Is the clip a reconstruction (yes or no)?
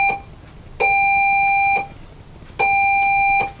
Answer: no